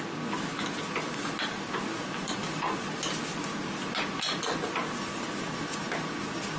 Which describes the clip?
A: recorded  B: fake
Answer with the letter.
A